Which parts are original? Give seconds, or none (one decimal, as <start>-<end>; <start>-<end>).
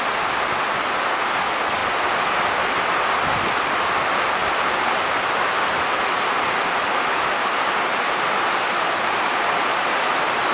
0.0-10.5